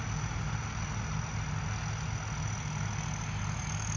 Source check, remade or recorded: recorded